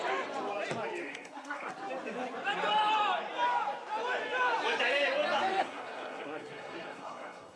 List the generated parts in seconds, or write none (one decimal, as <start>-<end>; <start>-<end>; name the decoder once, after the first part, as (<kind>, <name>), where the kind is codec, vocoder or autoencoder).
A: 1.0-1.7 (codec, SNAC); 5.6-7.6